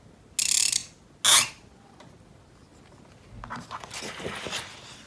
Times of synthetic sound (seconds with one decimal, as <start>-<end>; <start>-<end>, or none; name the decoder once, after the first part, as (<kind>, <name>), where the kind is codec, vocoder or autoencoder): none